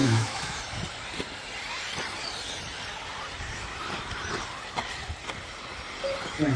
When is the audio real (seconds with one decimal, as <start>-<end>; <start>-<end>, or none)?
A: 0.6-6.6